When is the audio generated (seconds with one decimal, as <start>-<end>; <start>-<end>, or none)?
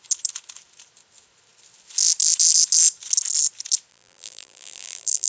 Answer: 3.9-5.3